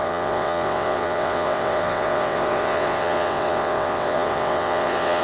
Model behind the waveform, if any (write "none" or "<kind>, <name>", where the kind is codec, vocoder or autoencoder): vocoder, WaveNeXt